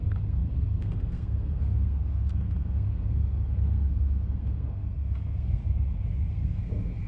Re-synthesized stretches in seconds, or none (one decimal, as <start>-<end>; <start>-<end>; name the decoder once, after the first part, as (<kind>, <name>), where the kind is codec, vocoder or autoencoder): 0.0-5.6 (codec, SNAC); 6.3-7.1

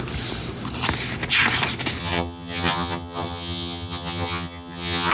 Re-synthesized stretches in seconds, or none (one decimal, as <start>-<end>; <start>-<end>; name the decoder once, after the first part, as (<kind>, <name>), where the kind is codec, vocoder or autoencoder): 2.0-5.1 (vocoder, HiFi-GAN)

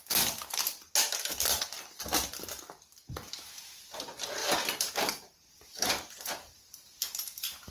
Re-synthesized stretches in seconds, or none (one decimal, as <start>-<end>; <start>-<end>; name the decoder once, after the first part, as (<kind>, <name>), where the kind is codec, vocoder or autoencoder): 4.4-7.7 (vocoder, BigVGAN v2)